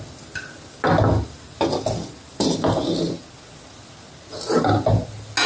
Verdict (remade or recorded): recorded